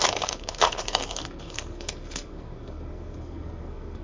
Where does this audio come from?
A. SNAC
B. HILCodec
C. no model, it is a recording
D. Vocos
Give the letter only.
A